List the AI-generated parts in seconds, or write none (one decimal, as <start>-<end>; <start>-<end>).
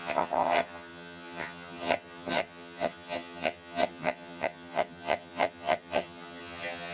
0.0-6.9